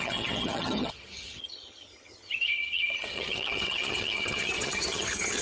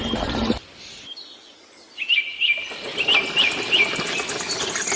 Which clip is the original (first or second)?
second